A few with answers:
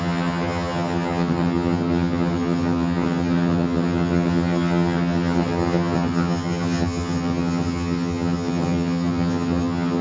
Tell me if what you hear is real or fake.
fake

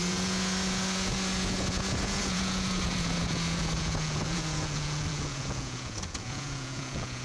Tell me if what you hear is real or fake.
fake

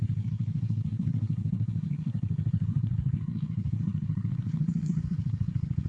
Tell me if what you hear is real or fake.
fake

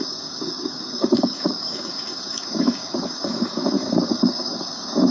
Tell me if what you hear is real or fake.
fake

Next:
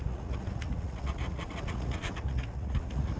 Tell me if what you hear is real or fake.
fake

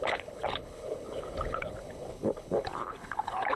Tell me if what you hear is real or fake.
fake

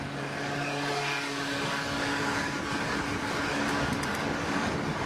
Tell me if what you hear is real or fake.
fake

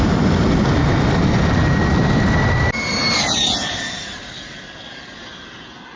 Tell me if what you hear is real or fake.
real